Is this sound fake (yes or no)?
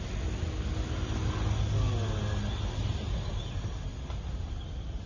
no